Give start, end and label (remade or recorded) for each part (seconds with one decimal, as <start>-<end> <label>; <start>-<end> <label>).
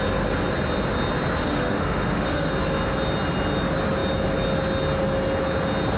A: 0.0-1.4 recorded; 1.4-2.5 remade; 2.5-6.0 recorded